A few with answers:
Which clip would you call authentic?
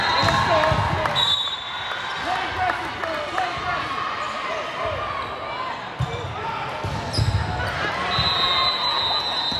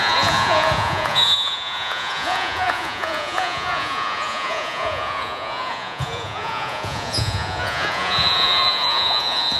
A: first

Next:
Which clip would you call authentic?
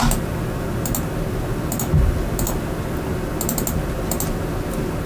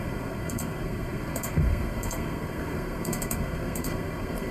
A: first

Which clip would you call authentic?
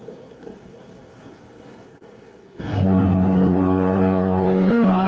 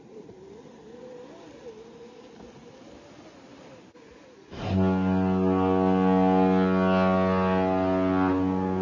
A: second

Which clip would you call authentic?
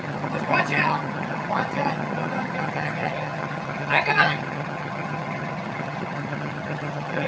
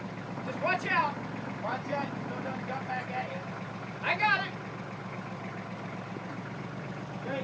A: second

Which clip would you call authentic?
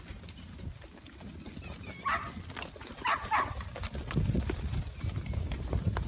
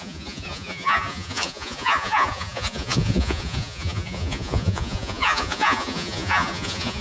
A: first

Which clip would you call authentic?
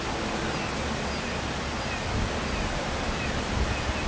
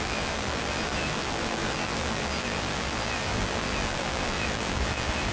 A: first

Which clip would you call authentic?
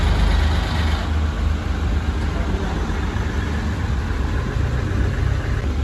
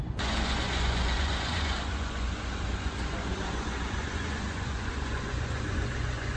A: first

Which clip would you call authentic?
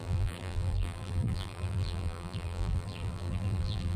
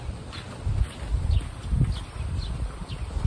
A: second